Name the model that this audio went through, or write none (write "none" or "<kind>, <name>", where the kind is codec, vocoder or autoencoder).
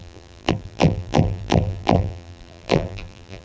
vocoder, BigVGAN v2